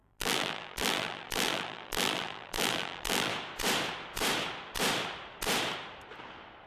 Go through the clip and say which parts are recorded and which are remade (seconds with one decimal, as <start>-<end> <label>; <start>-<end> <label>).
0.0-3.3 remade; 3.3-6.7 recorded